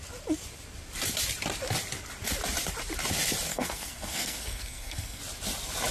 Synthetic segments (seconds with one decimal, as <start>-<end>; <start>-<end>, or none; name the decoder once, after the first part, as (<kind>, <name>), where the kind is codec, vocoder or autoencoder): 3.5-5.2 (codec, SNAC)